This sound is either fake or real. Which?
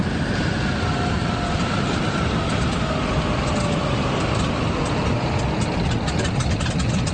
real